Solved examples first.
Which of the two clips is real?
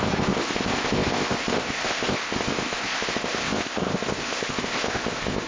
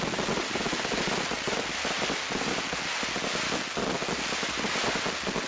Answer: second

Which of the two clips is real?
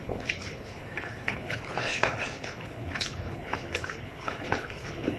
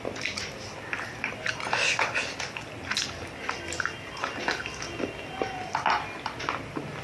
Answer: second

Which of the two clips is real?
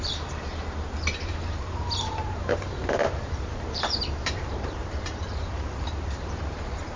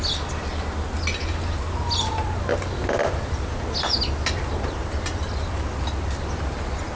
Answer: second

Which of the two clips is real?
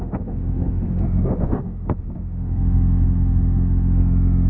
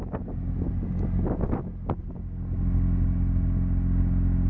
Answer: second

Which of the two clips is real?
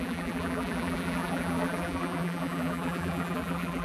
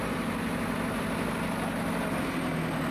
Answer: second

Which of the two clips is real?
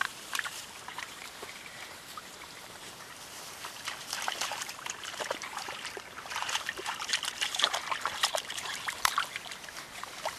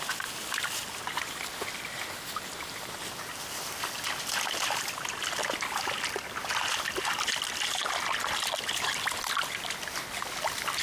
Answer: second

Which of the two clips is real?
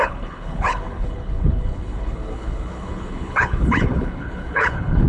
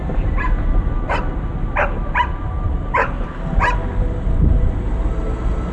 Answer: second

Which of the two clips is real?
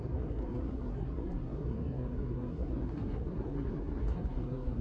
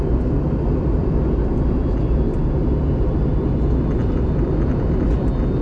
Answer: second